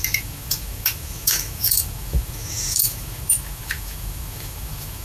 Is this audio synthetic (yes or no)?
yes